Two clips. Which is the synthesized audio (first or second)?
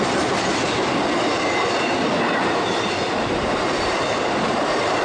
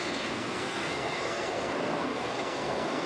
second